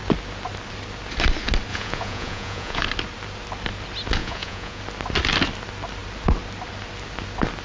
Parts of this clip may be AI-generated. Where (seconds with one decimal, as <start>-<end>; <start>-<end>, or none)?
1.7-2.8; 4.2-4.8